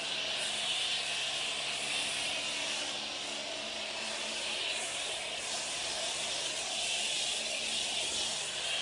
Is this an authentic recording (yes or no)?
yes